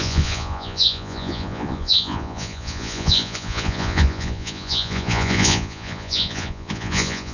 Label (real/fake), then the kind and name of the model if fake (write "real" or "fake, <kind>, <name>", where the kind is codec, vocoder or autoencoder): fake, vocoder, Vocos